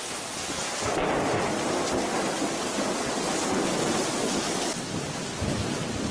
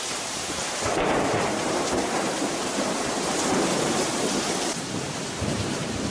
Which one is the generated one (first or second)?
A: second